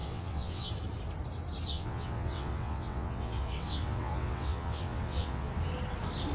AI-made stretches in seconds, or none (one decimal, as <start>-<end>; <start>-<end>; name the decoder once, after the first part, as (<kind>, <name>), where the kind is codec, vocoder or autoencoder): 0.0-0.7 (vocoder, WaveNeXt); 1.7-5.5